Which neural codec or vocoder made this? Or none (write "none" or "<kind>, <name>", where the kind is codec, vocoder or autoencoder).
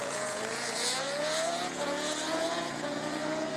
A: vocoder, Vocos